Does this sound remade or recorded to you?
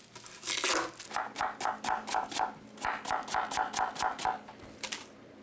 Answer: recorded